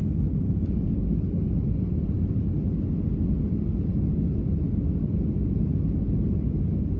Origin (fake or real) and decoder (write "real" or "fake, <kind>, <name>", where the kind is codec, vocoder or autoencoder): real